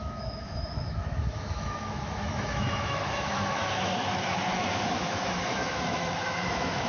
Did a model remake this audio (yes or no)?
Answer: yes